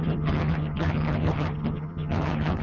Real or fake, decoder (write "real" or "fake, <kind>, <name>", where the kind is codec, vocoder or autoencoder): fake, vocoder, HiFi-GAN